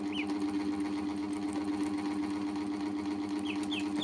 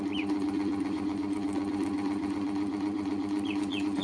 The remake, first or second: second